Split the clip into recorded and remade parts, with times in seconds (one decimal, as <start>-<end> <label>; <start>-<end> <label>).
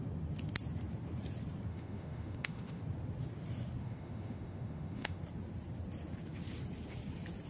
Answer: 0.0-1.7 recorded; 1.7-2.8 remade; 2.8-3.8 recorded; 3.8-5.2 remade; 5.2-7.5 recorded